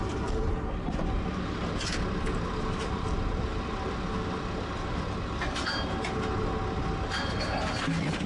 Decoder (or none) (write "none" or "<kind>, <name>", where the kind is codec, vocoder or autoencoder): none